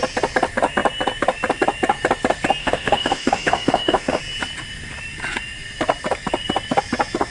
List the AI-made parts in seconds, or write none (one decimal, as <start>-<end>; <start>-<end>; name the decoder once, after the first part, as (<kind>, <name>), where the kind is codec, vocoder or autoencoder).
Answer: 2.6-4.2 (autoencoder, DAC-VAE)